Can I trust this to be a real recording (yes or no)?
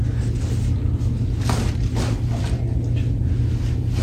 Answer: yes